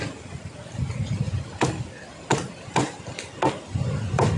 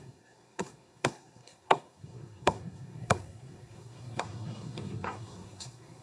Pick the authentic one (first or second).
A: first